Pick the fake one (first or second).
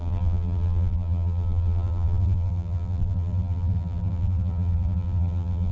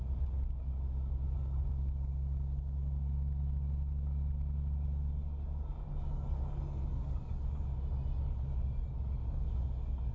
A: first